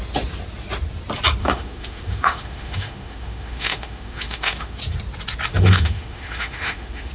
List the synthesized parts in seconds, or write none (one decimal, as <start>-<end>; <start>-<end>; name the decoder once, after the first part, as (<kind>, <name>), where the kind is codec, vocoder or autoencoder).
1.4-4.8 (autoencoder, DAC-VAE); 5.5-7.1